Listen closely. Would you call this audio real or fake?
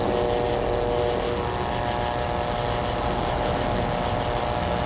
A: real